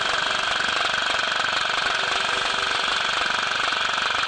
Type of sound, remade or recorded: recorded